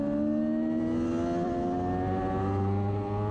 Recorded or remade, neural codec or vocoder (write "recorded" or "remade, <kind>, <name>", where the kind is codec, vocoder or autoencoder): recorded